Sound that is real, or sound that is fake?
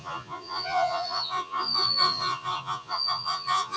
fake